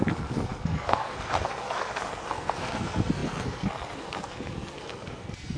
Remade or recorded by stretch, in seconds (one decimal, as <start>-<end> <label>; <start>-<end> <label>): 0.0-5.6 remade